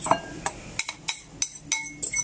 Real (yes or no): yes